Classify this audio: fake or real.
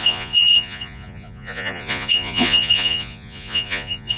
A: fake